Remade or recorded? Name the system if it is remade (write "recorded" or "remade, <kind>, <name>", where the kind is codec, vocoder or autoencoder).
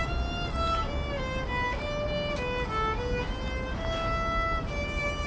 recorded